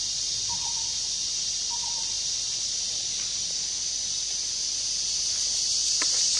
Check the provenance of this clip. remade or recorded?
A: recorded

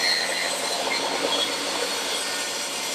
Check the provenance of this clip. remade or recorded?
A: recorded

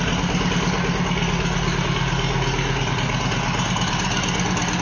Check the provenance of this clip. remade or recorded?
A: recorded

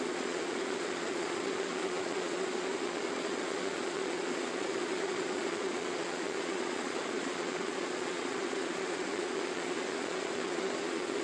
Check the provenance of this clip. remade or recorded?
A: remade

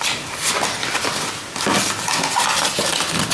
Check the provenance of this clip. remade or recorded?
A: recorded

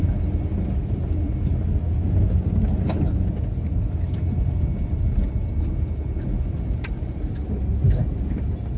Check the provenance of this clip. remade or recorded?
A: recorded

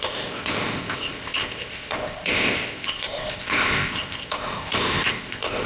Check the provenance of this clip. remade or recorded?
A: remade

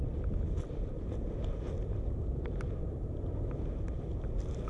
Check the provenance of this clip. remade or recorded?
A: recorded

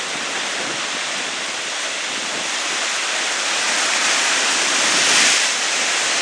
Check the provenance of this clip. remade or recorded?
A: remade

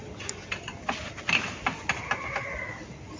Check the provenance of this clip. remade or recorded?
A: recorded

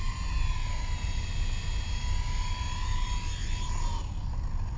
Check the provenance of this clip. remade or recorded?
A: recorded